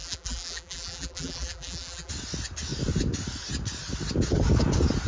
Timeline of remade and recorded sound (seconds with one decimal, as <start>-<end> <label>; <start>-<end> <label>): 0.0-2.1 remade; 2.1-5.1 recorded